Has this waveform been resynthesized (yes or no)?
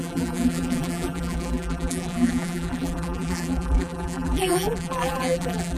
yes